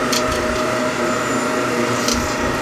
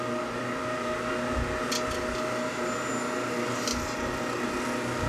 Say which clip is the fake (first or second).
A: first